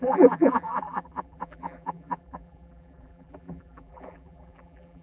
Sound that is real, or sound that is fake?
fake